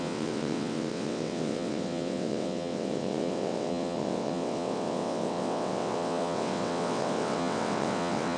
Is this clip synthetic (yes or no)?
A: yes